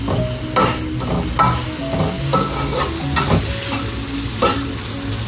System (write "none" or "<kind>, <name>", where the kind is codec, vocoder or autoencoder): none